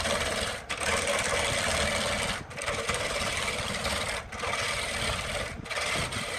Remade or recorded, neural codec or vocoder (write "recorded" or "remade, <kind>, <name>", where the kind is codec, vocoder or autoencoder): recorded